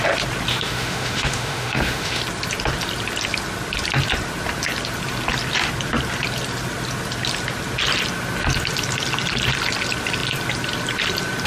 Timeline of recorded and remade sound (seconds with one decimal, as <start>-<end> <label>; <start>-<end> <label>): 0.0-0.5 recorded; 0.5-2.2 remade; 2.2-11.5 recorded